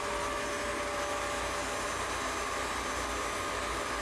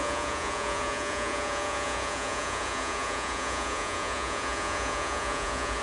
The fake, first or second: second